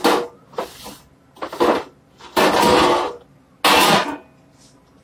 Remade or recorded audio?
recorded